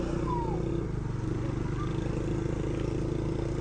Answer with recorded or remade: recorded